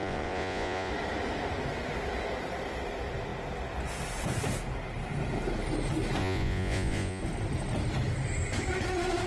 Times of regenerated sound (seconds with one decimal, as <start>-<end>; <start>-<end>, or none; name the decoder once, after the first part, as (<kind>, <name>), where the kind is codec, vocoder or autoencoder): 0.0-0.9 (vocoder, Vocos); 6.2-7.2